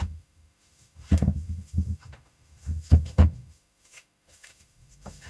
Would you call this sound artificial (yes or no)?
yes